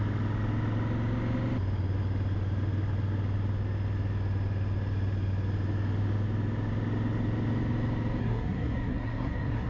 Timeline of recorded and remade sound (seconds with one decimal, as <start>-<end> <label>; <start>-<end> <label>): 0.0-8.2 recorded; 8.2-9.7 remade